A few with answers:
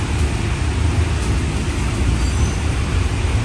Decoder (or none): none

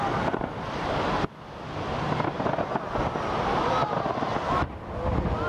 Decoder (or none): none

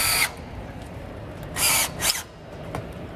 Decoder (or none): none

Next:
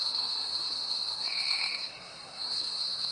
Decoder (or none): codec, SNAC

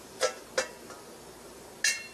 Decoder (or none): none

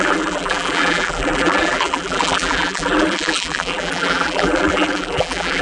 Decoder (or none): vocoder, BigVGAN v2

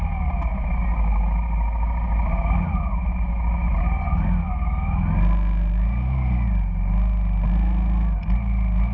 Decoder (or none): none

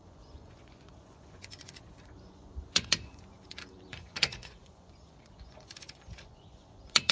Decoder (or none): vocoder, Vocos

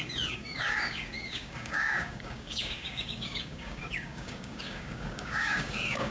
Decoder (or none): codec, DAC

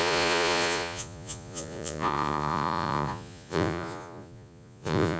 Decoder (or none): vocoder, Vocos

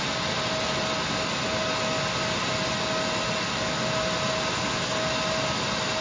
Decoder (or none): none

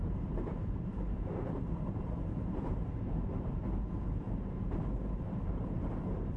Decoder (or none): vocoder, BigVGAN v2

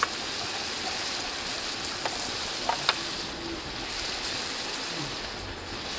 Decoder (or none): none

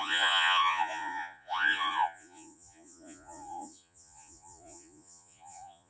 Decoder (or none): vocoder, Vocos